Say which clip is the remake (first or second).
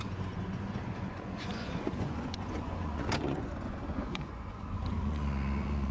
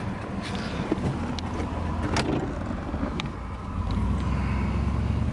first